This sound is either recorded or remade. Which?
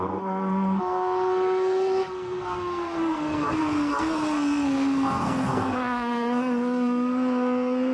remade